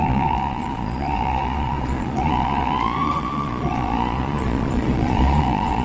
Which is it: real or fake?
fake